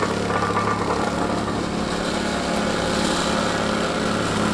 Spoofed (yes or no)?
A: no